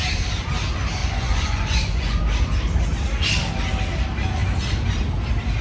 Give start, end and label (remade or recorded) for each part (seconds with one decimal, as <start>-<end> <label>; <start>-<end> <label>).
0.0-1.0 recorded; 1.0-2.2 remade; 2.2-5.6 recorded